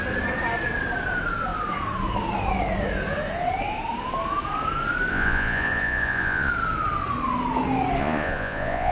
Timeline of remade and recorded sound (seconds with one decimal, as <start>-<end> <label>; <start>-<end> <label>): 0.0-5.1 recorded; 5.1-6.5 remade; 6.5-8.0 recorded; 8.0-8.9 remade